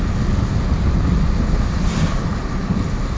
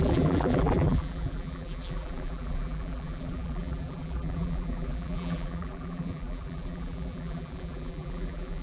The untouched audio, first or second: first